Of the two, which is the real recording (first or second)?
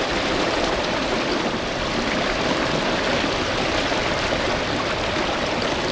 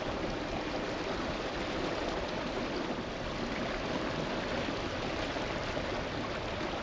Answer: second